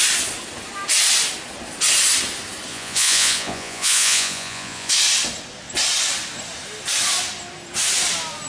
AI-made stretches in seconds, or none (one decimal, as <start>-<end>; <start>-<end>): 2.7-4.9